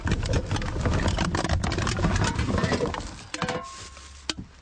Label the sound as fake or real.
real